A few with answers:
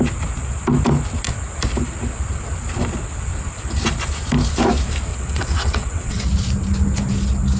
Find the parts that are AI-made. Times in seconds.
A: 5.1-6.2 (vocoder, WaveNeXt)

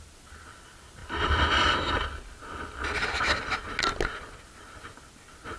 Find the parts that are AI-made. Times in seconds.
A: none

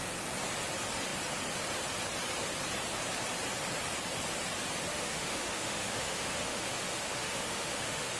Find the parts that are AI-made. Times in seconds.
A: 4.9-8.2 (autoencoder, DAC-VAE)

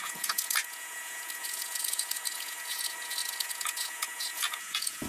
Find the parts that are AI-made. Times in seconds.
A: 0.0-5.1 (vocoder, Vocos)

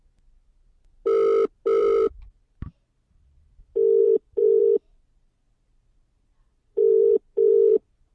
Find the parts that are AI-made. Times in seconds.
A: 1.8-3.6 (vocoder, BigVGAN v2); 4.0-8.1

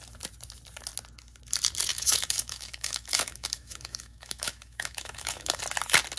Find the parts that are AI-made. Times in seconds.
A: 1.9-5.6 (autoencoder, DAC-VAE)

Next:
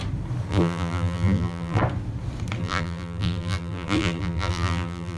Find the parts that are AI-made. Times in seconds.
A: 0.5-1.8 (vocoder, BigVGAN v2); 2.6-5.2

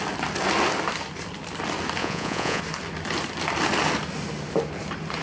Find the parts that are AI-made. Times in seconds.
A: 2.0-2.6 (vocoder, Vocos)